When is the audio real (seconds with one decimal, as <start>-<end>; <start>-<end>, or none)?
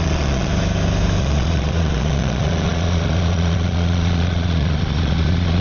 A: 0.5-1.2